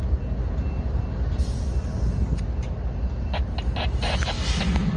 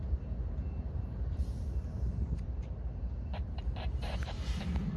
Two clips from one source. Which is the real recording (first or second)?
first